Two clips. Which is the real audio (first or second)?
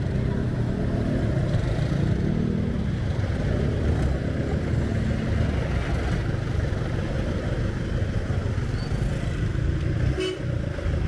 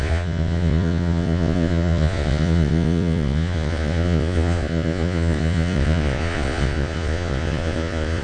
first